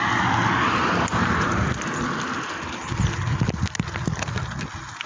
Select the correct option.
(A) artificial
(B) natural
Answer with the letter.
B